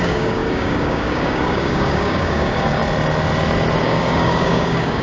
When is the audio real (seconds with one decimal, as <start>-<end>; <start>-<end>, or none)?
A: 2.8-3.8